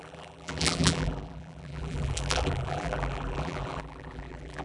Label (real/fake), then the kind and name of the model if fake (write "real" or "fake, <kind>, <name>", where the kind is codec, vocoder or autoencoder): fake, vocoder, BigVGAN v2